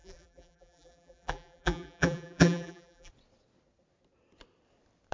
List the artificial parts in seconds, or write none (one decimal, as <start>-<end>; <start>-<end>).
0.0-3.1